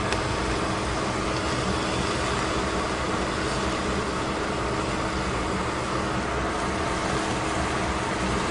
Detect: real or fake real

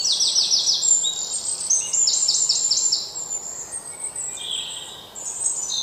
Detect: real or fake real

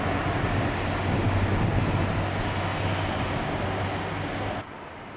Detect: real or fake real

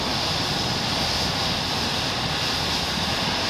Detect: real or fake real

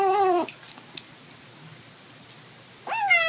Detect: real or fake real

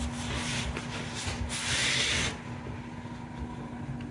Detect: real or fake real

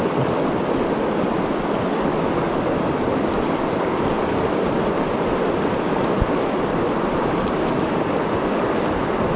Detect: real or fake real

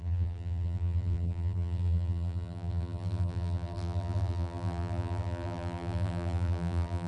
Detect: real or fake fake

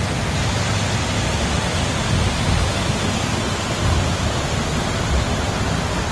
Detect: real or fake real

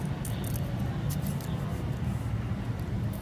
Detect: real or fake real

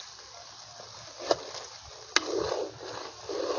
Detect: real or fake real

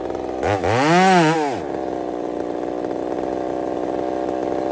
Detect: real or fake real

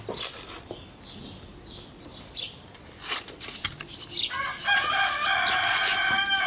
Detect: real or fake real